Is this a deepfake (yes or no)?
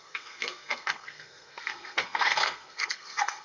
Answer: yes